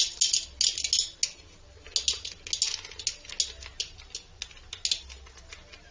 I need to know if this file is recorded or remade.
recorded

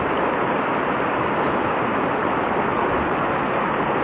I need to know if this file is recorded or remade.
recorded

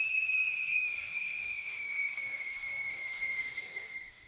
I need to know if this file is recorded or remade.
remade